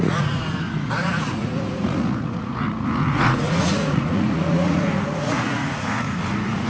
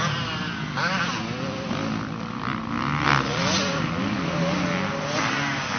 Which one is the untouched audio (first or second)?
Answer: second